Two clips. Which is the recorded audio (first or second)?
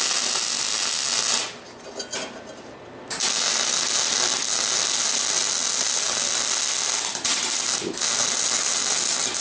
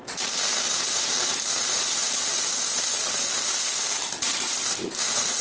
first